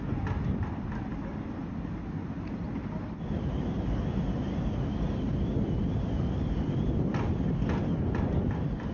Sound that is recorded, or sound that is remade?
recorded